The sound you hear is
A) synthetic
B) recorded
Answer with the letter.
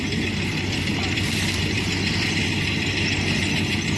B